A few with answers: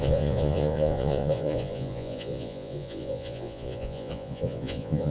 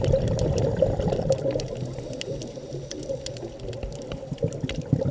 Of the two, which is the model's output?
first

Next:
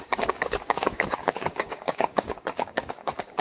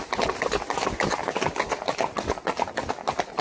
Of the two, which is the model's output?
first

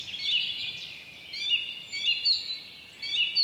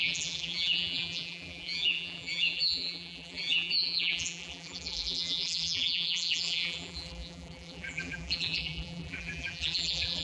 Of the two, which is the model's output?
second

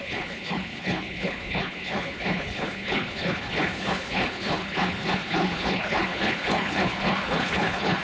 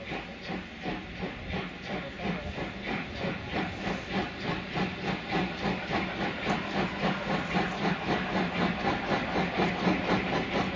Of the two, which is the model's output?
first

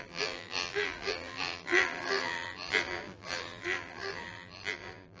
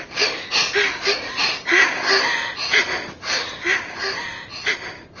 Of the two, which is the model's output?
first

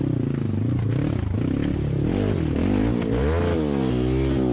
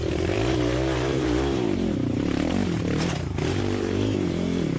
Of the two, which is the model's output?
second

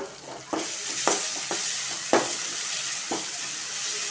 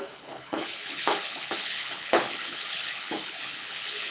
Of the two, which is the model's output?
second